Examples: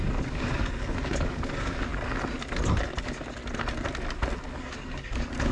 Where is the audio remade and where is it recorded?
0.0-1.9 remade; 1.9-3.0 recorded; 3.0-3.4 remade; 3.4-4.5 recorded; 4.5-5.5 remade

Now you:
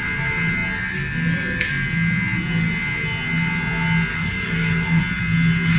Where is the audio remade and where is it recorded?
0.0-4.1 recorded; 4.1-5.0 remade; 5.0-5.8 recorded

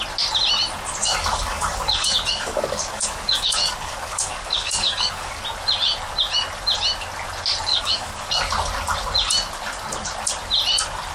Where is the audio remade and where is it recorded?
0.0-1.0 recorded; 1.0-5.4 remade; 5.4-7.7 recorded; 7.7-8.3 remade; 8.3-11.1 recorded

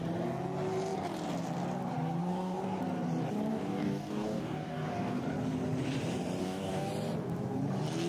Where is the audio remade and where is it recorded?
0.0-2.2 recorded; 2.2-2.8 remade; 2.8-3.5 recorded; 3.5-5.2 remade; 5.2-6.4 recorded; 6.4-6.9 remade; 6.9-8.1 recorded

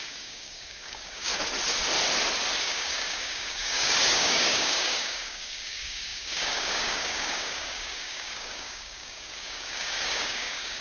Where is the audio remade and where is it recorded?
0.0-1.3 remade; 1.3-2.6 recorded; 2.6-10.8 remade